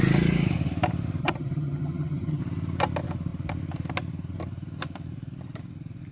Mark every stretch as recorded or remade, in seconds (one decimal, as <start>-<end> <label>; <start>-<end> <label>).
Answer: 0.0-1.2 recorded; 1.2-2.4 remade; 2.4-6.1 recorded